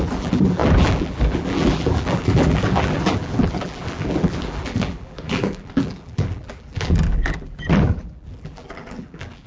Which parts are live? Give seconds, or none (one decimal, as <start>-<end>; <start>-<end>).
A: none

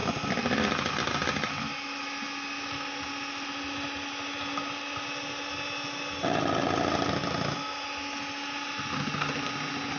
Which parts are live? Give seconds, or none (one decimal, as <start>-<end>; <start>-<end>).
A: 0.0-10.0

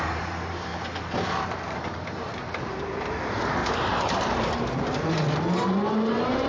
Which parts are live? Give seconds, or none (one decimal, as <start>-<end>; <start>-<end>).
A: 0.7-1.4; 3.6-5.6

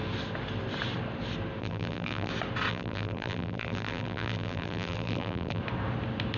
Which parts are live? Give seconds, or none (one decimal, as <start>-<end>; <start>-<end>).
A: 0.0-1.6; 2.3-2.7; 5.6-6.4